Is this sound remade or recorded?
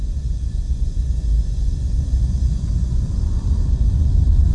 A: remade